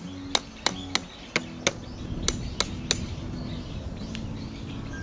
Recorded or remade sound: recorded